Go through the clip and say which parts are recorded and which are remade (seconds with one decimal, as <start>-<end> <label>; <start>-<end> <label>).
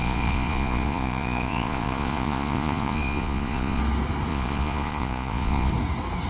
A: 0.0-3.8 remade; 3.8-4.3 recorded; 4.3-5.7 remade; 5.7-6.3 recorded